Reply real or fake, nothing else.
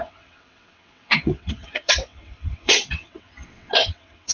fake